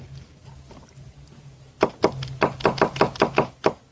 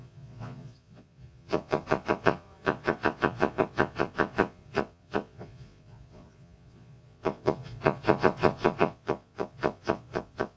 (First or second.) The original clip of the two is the first